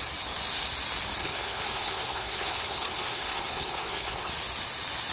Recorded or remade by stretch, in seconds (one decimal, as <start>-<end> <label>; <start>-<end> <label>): 0.0-1.2 recorded; 1.2-4.3 remade; 4.3-5.1 recorded